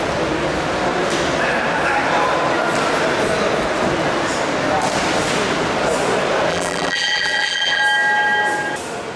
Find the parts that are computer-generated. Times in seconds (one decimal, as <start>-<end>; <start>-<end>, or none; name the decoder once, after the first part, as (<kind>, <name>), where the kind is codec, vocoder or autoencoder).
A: 6.5-7.8 (vocoder, BigVGAN v2)